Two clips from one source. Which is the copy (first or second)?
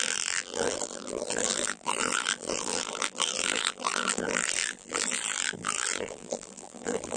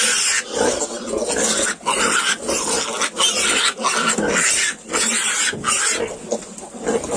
first